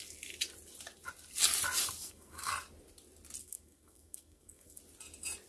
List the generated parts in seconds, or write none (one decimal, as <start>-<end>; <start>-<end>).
2.0-2.5; 3.4-4.8